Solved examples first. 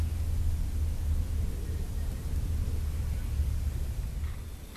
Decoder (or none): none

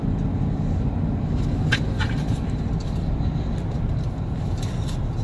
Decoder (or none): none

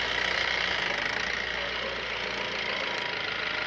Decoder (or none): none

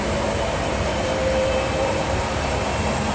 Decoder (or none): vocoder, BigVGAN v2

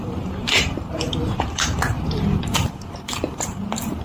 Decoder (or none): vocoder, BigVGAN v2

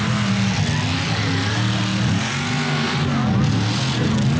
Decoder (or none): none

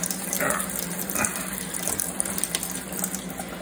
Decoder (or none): none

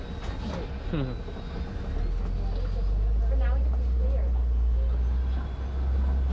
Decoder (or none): none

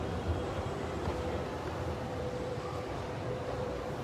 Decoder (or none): vocoder, BigVGAN v2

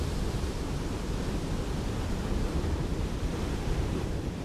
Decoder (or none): vocoder, BigVGAN v2